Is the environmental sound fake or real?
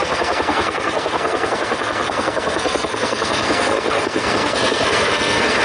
fake